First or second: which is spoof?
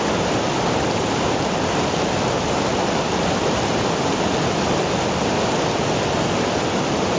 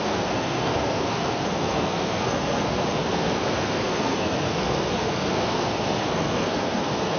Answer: second